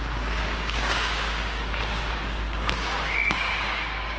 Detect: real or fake fake